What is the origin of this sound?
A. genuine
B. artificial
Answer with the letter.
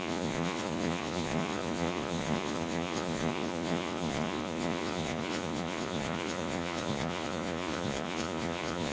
B